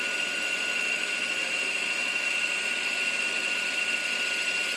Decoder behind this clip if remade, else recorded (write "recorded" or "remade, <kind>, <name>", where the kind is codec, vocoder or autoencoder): recorded